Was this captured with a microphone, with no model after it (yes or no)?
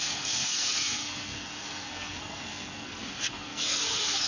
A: no